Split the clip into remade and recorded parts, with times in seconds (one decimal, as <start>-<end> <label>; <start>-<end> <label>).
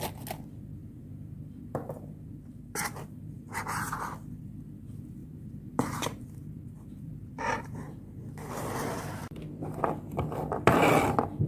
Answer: 0.0-0.8 recorded; 0.8-4.4 remade; 4.4-5.2 recorded; 5.2-9.8 remade; 9.8-11.5 recorded